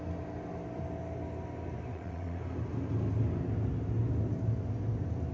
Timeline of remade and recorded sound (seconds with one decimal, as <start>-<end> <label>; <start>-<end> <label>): 0.0-1.9 recorded; 1.9-2.4 remade; 2.4-5.3 recorded

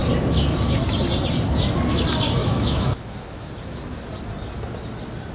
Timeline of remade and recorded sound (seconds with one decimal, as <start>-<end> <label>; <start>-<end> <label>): 0.0-2.4 recorded; 2.4-3.5 remade; 3.5-5.3 recorded

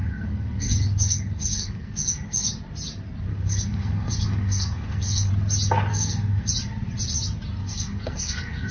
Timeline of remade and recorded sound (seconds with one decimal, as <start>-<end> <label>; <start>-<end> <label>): 0.0-2.5 remade; 2.5-3.3 recorded; 3.3-5.3 remade; 5.3-5.9 recorded; 5.9-6.5 remade; 6.5-7.6 recorded; 7.6-8.7 remade